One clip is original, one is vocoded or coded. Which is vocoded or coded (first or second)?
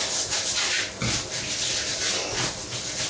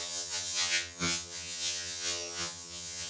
second